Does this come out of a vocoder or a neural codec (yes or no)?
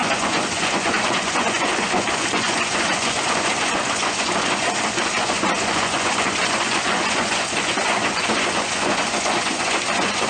yes